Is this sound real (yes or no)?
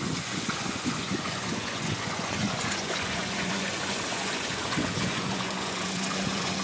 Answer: no